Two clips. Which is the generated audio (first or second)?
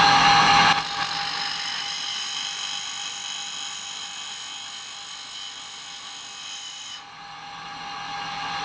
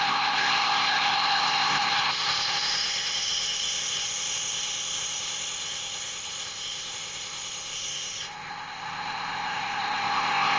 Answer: second